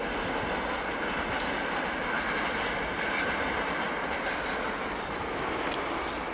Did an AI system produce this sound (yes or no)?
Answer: no